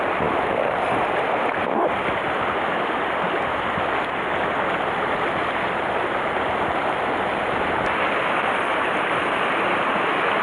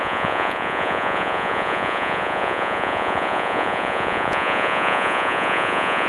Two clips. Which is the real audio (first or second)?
first